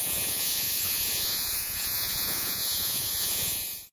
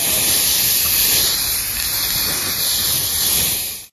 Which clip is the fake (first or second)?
first